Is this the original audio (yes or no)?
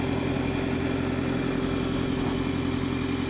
yes